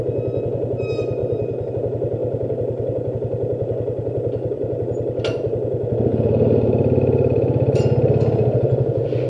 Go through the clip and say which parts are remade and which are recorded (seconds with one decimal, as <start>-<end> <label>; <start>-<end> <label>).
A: 0.0-1.2 recorded; 1.2-1.7 remade; 1.7-6.1 recorded; 6.1-7.8 remade; 7.8-9.3 recorded